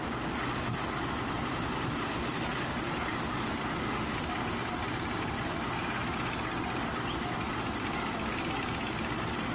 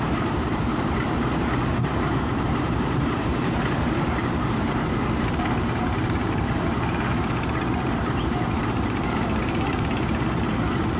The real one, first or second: first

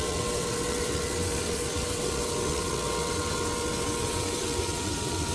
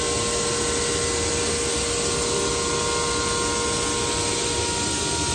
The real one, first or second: second